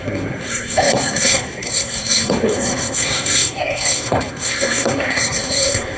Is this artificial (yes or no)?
yes